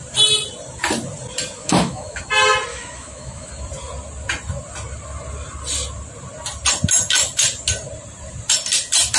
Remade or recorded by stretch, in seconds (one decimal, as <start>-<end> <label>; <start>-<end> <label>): 0.0-1.6 recorded; 1.6-2.2 remade; 2.2-2.7 recorded; 2.7-3.5 remade; 3.5-9.2 recorded